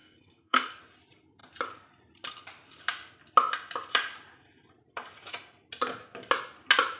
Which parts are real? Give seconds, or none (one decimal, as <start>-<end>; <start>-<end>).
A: 0.8-7.0